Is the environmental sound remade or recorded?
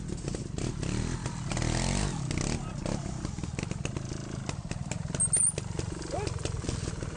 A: recorded